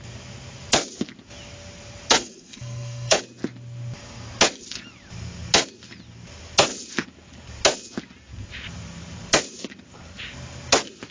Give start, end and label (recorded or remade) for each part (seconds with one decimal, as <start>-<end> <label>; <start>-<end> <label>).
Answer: 0.0-2.2 recorded; 2.2-3.2 remade; 3.2-11.1 recorded